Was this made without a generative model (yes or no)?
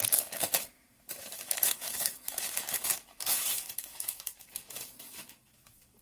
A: no